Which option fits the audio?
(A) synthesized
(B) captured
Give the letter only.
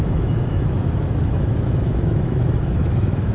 A